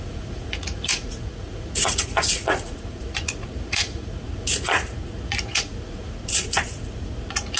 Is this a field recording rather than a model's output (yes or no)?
no